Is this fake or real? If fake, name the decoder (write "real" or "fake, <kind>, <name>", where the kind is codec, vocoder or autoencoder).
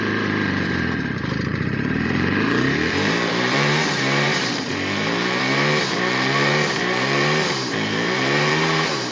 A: fake, vocoder, BigVGAN v2